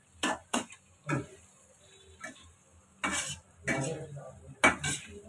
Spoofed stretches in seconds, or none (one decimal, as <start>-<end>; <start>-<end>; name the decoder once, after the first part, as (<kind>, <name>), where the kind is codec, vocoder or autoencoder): 0.4-1.2 (vocoder, Vocos)